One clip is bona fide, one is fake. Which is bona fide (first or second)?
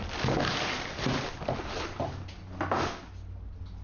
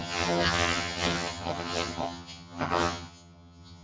first